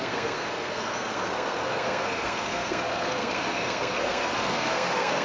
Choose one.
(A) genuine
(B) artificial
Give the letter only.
B